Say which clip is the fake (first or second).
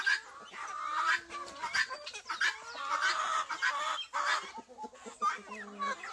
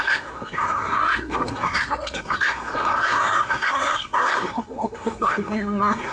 second